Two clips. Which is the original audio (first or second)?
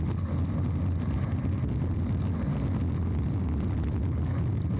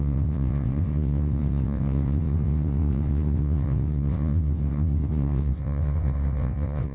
first